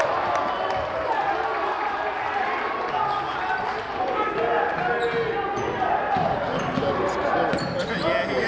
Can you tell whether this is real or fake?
real